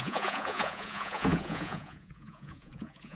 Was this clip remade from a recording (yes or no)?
yes